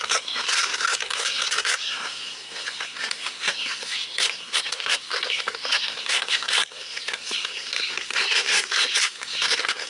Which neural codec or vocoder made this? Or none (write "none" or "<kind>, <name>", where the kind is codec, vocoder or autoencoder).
codec, SNAC